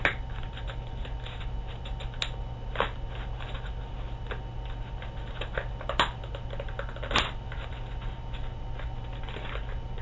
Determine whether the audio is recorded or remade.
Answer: recorded